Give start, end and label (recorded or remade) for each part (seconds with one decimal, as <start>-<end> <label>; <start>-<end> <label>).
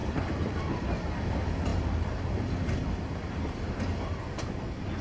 0.0-0.6 remade; 0.6-5.0 recorded